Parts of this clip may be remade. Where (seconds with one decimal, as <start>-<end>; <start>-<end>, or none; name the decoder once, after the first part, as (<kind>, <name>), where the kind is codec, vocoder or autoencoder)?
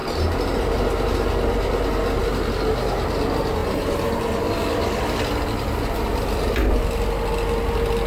none